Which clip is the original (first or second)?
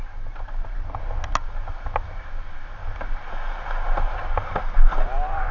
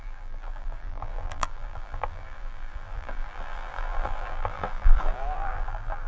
first